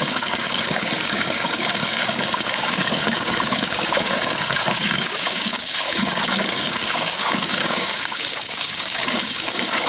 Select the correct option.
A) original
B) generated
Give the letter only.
B